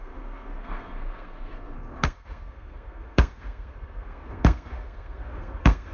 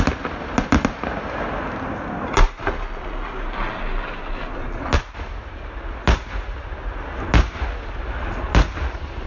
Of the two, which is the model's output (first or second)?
first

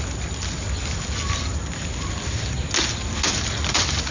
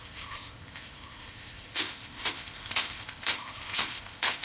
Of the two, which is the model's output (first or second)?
second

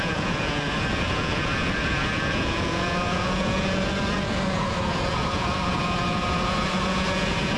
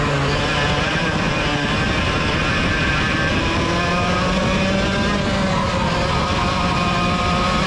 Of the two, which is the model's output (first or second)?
first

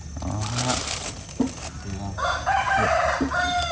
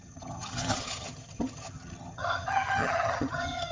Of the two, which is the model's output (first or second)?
second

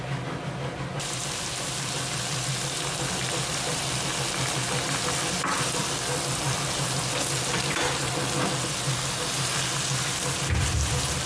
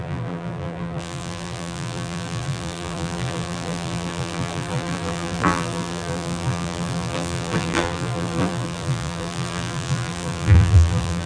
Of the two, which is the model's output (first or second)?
second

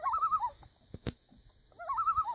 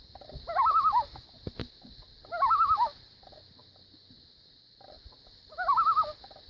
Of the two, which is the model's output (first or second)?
first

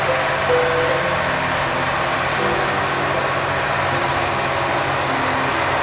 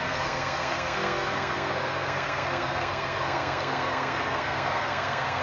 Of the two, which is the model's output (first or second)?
second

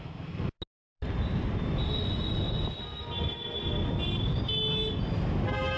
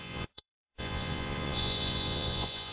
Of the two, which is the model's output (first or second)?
second